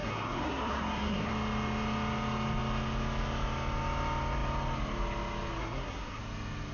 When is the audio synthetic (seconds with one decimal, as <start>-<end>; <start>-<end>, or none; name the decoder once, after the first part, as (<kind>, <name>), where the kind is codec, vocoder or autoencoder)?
0.0-1.3 (codec, SNAC); 5.6-6.2